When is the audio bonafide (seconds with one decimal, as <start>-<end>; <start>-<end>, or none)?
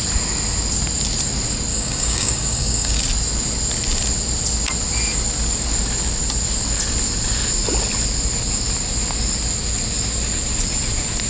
0.0-1.7; 3.0-11.3